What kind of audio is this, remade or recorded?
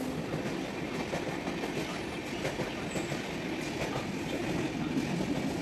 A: recorded